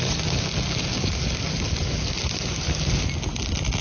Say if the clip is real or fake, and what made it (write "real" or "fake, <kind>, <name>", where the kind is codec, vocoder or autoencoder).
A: real